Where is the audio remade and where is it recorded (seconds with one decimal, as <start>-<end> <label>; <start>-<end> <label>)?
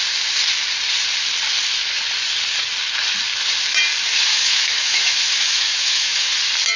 0.0-4.3 recorded; 4.3-6.3 remade; 6.3-6.8 recorded